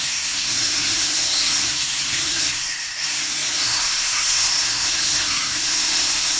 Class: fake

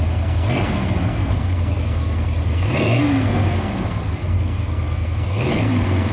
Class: fake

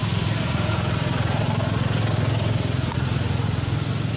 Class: real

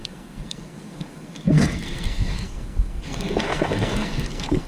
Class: fake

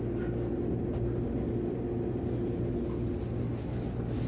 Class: real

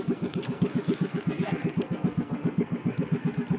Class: fake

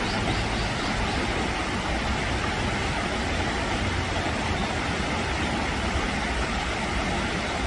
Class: real